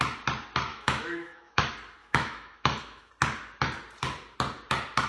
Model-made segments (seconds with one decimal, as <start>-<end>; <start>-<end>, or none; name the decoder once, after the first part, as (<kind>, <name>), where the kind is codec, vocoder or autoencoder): 0.7-1.6 (autoencoder, DAC-VAE); 2.0-3.1